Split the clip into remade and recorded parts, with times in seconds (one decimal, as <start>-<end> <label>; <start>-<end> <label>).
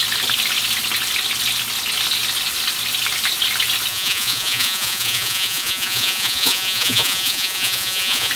0.0-3.9 recorded; 3.9-8.3 remade